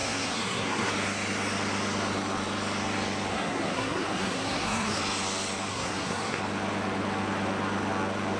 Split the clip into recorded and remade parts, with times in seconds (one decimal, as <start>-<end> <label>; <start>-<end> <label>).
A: 0.0-0.9 remade; 0.9-3.3 recorded; 3.3-5.0 remade; 5.0-5.7 recorded; 5.7-6.4 remade; 6.4-8.4 recorded